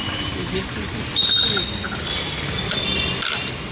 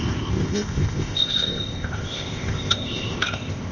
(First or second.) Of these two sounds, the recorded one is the first